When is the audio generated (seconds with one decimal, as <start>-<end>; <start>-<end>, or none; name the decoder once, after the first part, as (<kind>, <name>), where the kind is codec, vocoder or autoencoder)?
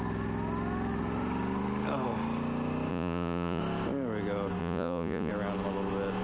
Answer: 2.9-3.6 (vocoder, Vocos); 4.6-5.3